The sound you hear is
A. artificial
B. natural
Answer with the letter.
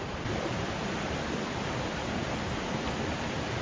B